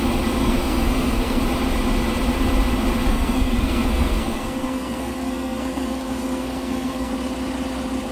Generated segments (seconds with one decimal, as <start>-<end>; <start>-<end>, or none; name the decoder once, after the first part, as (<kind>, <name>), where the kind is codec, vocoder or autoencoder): 0.4-1.4 (codec, SNAC); 3.1-7.1